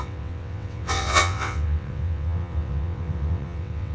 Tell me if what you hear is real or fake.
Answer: fake